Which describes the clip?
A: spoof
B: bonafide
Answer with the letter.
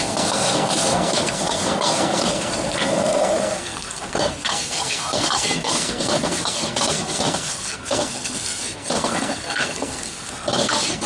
A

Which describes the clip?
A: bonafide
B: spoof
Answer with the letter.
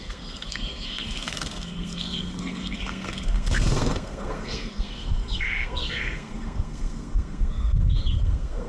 B